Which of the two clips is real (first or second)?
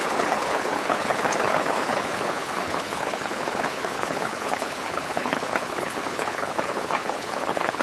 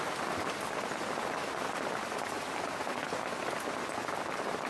second